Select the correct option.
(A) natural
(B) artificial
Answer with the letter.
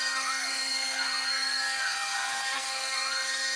B